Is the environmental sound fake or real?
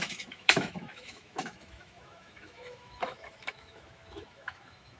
fake